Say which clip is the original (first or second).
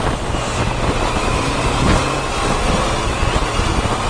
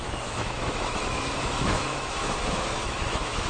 first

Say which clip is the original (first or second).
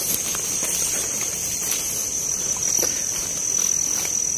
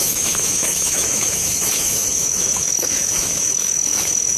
first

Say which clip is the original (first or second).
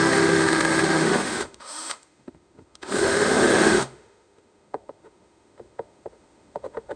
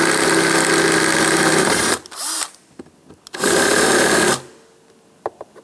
second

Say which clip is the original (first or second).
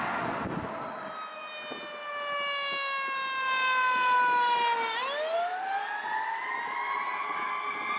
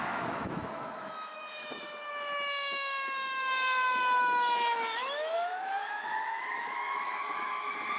first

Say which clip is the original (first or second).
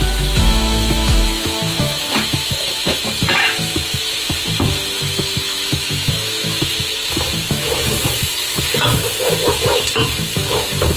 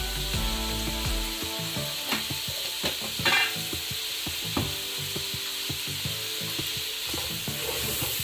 second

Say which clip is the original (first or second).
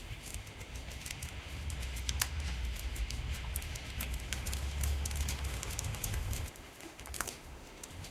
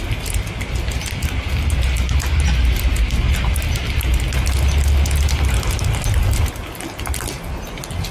second